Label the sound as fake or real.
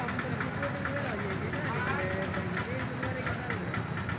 real